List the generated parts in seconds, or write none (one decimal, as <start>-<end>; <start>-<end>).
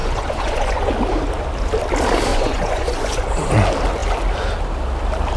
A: 0.0-0.9; 2.3-3.5